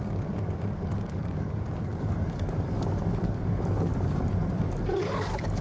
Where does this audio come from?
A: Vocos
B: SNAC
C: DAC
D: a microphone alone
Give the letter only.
C